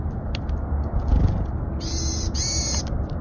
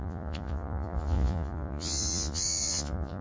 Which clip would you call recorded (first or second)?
first